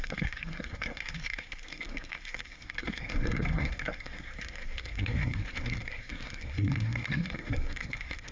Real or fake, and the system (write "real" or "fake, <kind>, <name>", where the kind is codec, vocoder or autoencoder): fake, codec, SNAC